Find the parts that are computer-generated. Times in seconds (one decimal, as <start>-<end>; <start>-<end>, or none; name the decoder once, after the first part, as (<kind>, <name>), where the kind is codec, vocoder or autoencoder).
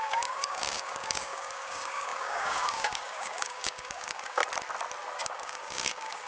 0.0-4.4 (codec, DAC); 5.2-6.3